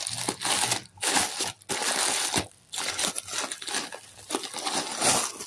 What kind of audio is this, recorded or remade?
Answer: recorded